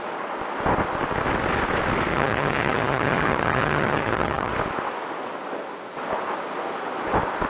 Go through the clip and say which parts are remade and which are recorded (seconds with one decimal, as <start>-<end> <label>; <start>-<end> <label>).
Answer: 0.0-2.1 recorded; 2.1-4.5 remade; 4.5-7.5 recorded